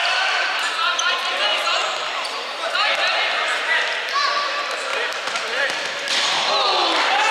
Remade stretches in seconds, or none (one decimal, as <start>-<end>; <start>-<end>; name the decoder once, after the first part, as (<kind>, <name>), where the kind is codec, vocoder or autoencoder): 0.0-0.7 (vocoder, BigVGAN v2); 1.8-4.2